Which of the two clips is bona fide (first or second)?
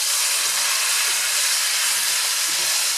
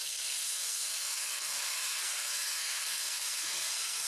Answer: first